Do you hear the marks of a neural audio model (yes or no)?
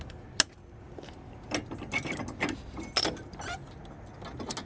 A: no